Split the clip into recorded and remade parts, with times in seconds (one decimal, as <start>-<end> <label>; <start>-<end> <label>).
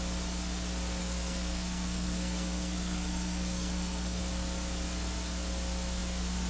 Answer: 0.0-1.0 recorded; 1.0-4.2 remade; 4.2-6.5 recorded